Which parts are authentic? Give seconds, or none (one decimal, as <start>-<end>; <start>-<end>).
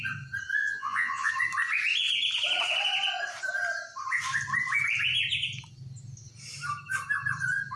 0.0-0.6; 1.3-7.8